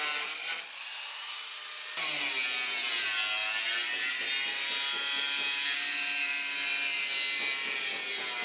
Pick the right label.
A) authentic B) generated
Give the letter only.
A